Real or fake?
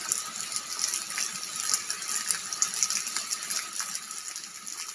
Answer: real